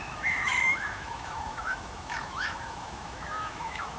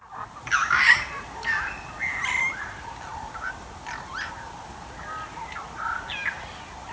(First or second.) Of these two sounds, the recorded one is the second